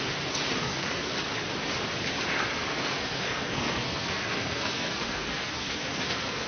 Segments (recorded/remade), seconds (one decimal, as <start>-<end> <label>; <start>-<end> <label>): 0.0-0.6 recorded; 0.6-1.1 remade; 1.1-2.7 recorded; 2.7-6.5 remade